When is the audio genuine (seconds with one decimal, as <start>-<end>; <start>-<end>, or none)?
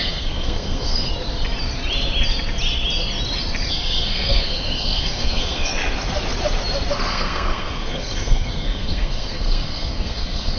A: 1.1-3.7; 5.7-7.1